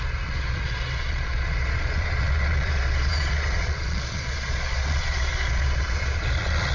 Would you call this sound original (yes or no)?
no